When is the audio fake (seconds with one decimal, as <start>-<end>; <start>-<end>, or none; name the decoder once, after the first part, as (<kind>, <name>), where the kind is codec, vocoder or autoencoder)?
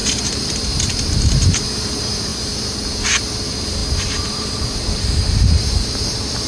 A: 0.0-2.3 (vocoder, BigVGAN v2); 3.2-6.5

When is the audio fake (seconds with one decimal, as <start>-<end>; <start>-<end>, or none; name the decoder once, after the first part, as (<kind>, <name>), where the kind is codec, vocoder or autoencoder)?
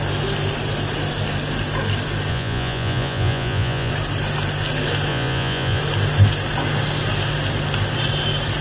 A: 2.3-3.9 (vocoder, Vocos); 5.1-5.8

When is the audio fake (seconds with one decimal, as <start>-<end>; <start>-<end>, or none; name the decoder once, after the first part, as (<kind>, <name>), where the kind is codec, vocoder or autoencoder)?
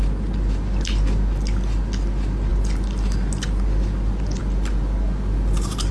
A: none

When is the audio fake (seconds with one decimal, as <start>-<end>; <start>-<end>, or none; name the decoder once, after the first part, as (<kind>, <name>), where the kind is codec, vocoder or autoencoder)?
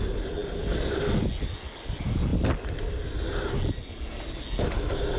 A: none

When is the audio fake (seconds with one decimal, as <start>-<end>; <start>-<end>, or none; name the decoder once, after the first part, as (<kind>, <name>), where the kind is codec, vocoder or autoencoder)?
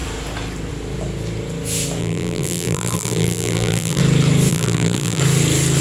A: 2.0-4.0 (vocoder, BigVGAN v2); 4.5-5.2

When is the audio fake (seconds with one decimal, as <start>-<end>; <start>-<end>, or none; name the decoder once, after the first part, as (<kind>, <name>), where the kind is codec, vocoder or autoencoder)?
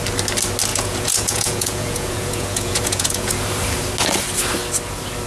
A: 0.7-3.3 (vocoder, Vocos)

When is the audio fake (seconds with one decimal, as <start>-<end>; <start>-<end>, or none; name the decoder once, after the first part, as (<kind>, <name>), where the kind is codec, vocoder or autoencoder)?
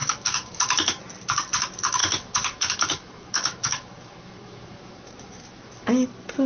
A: 0.0-1.0 (autoencoder, DAC-VAE); 2.0-5.9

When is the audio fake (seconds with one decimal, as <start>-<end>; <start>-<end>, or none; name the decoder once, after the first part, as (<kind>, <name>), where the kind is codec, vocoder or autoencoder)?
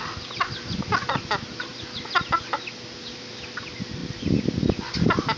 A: none